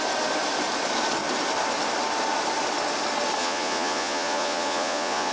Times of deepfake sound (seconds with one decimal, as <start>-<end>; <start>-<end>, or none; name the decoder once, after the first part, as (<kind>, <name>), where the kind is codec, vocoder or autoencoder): 3.4-5.3 (vocoder, Vocos)